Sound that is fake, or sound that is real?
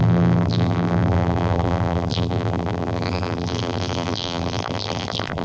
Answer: fake